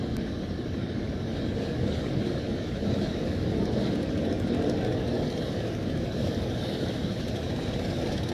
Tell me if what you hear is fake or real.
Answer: fake